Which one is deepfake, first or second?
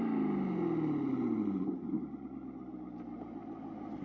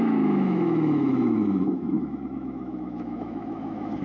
second